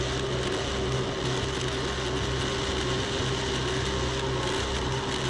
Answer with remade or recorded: recorded